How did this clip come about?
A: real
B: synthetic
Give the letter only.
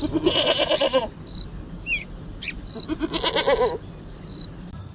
A